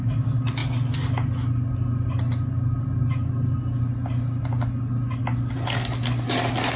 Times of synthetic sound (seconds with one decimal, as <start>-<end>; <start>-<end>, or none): none